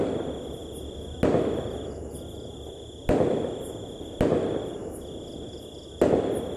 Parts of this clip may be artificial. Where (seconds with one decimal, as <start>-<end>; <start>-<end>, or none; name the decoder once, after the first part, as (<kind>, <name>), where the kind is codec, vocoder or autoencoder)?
none